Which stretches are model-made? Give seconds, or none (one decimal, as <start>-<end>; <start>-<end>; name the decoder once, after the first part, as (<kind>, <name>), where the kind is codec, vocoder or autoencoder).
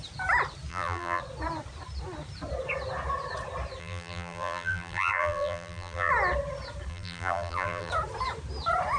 0.7-1.2 (vocoder, BigVGAN v2); 3.8-6.1; 6.9-7.9